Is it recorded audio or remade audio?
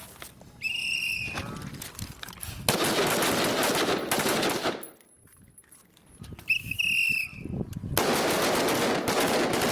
recorded